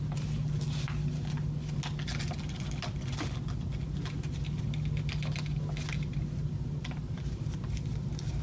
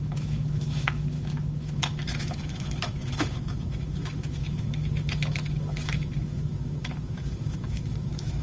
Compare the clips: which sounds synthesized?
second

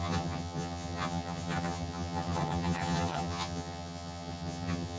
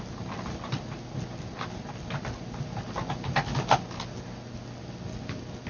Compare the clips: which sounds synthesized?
first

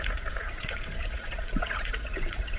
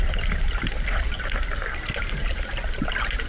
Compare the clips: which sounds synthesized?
first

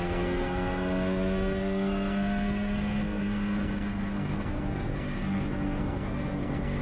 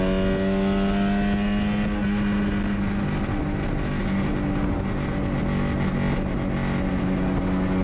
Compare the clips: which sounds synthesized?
first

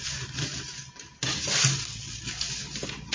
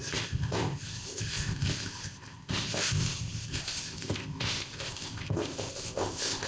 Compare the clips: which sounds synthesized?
second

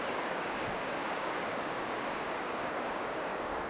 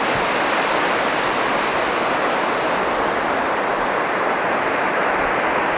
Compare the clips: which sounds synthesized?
first